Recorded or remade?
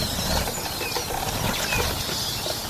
recorded